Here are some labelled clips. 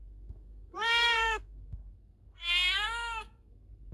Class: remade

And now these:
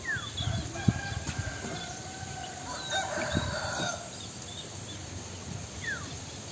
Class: recorded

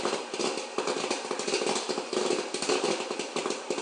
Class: recorded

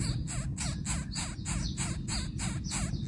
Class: recorded